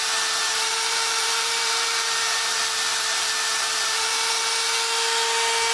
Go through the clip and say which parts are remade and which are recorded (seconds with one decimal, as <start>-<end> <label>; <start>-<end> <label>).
0.0-0.4 recorded; 0.4-2.5 remade; 2.5-2.9 recorded; 2.9-4.3 remade; 4.3-5.7 recorded